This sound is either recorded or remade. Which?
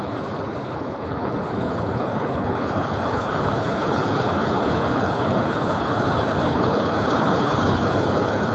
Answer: remade